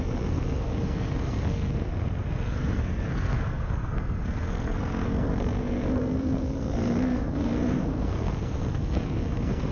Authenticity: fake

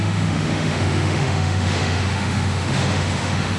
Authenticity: fake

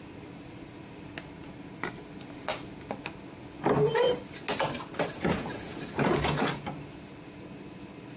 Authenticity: real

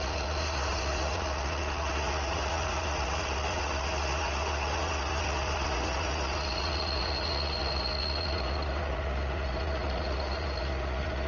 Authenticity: fake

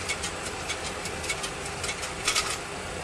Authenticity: fake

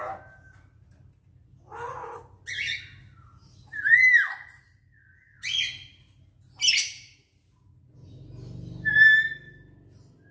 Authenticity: real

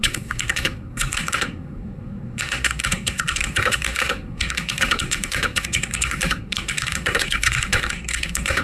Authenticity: fake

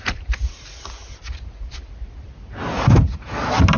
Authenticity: real